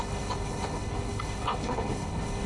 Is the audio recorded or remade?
remade